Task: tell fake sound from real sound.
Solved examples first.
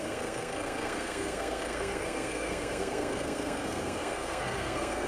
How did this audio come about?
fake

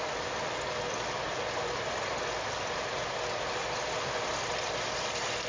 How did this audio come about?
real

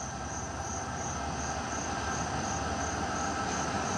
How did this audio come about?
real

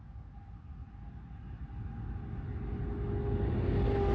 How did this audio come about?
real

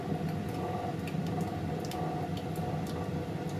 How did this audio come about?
real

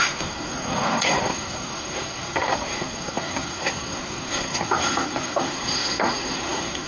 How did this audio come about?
fake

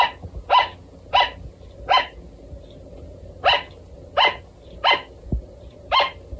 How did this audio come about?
real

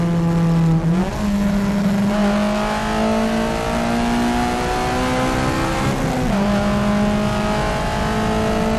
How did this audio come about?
real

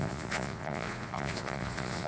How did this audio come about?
fake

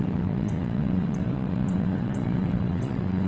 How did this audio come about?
fake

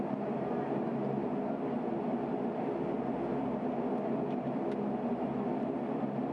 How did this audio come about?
real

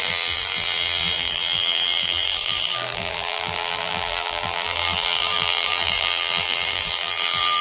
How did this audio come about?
fake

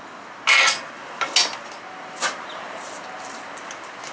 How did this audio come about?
real